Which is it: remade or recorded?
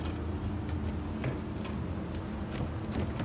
recorded